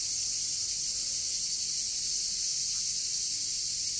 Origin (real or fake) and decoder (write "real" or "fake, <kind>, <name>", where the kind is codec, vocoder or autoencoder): real